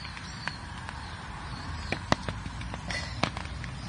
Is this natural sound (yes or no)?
yes